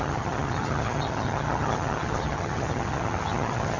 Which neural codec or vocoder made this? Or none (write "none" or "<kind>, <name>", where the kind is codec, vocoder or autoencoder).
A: vocoder, HiFi-GAN